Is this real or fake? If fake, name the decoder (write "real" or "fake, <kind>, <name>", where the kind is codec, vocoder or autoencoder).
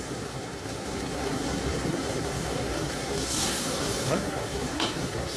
fake, codec, SNAC